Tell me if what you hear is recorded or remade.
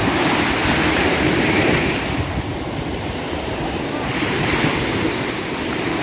remade